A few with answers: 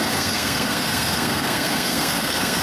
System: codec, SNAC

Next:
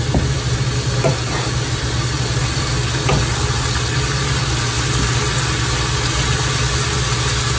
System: none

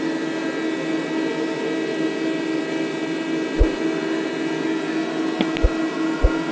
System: none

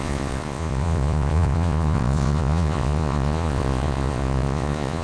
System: vocoder, Vocos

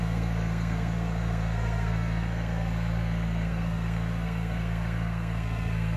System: codec, SNAC